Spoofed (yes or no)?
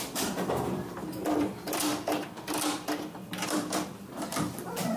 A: yes